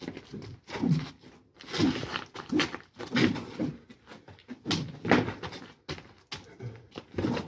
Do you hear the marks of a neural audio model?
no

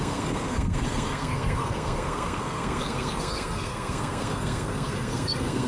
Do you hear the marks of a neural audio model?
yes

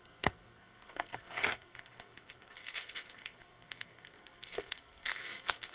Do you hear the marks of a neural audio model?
yes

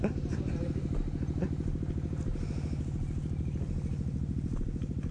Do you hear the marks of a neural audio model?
no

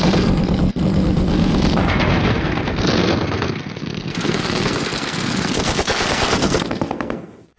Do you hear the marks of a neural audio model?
yes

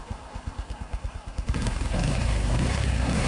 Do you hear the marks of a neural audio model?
yes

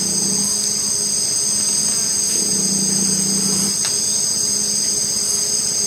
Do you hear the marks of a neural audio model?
no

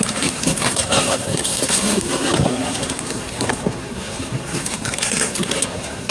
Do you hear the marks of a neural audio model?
yes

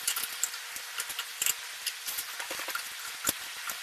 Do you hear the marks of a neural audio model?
no